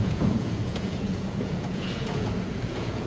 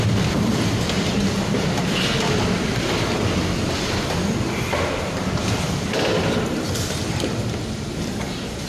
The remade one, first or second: first